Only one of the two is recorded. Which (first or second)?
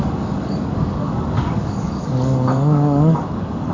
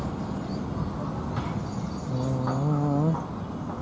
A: second